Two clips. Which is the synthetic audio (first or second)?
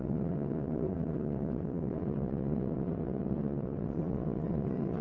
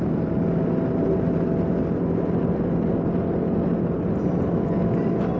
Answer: first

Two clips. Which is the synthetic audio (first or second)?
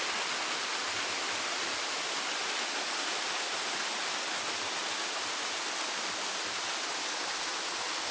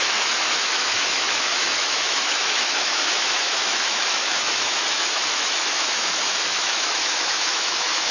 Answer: second